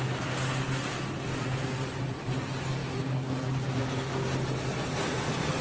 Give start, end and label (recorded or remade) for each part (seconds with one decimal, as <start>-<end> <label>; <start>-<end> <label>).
0.0-5.6 recorded